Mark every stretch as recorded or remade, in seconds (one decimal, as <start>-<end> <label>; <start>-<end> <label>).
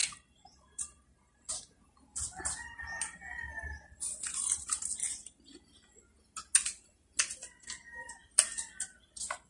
0.0-1.5 remade; 1.5-3.5 recorded; 3.5-5.6 remade; 5.6-8.2 recorded; 8.2-9.5 remade